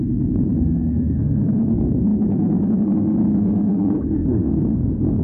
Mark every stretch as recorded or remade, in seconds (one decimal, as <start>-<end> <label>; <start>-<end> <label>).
0.0-5.2 remade

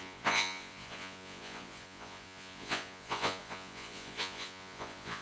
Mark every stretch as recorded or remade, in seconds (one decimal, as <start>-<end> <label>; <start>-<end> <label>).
0.0-5.2 remade

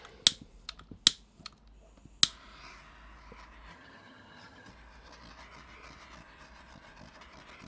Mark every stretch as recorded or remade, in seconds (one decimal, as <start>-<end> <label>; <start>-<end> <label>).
0.0-3.7 recorded; 3.7-4.7 remade; 4.7-7.7 recorded

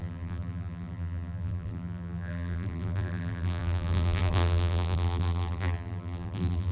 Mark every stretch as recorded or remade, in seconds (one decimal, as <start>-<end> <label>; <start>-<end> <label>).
0.0-6.7 remade